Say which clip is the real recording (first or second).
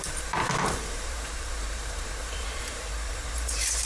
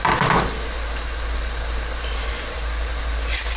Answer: second